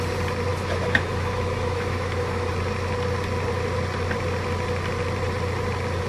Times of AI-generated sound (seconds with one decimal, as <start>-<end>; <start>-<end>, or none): 0.5-2.5